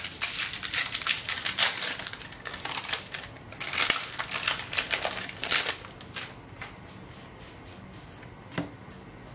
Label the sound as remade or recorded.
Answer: recorded